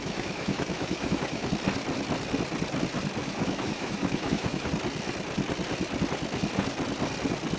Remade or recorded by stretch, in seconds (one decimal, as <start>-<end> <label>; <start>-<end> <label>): 0.0-1.5 remade; 1.5-3.2 recorded; 3.2-4.7 remade; 4.7-7.6 recorded